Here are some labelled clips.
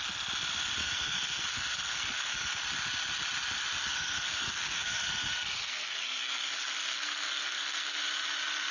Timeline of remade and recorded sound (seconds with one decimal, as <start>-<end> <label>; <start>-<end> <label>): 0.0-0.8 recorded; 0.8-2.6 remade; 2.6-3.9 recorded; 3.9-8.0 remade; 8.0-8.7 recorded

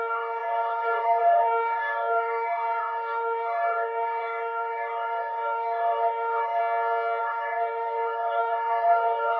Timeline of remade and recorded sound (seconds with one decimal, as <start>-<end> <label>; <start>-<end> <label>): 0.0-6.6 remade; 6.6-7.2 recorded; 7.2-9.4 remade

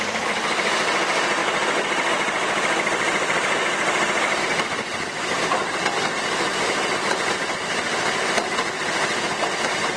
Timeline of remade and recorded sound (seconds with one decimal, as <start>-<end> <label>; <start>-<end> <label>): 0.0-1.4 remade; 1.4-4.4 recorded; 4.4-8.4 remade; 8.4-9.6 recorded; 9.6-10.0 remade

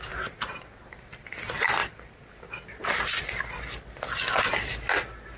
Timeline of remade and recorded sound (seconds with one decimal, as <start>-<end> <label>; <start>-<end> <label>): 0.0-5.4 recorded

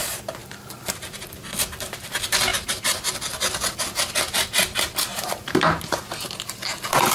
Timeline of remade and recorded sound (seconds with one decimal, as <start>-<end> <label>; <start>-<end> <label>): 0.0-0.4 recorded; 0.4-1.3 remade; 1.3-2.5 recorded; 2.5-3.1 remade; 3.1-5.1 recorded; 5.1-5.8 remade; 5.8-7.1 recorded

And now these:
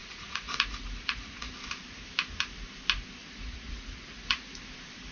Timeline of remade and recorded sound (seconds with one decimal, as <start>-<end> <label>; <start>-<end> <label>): 0.0-1.5 remade; 1.5-3.2 recorded; 3.2-4.6 remade; 4.6-5.1 recorded

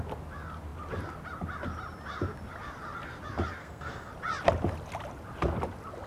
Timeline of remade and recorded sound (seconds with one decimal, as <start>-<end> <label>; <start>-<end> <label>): 0.0-3.6 recorded; 3.6-4.1 remade; 4.1-6.1 recorded

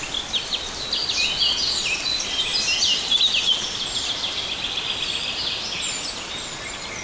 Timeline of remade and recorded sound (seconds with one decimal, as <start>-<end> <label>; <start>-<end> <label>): 0.0-7.0 recorded